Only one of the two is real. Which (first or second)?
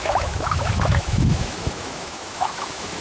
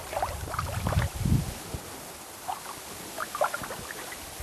second